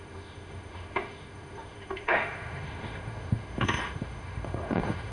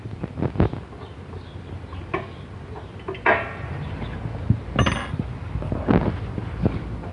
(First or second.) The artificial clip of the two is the first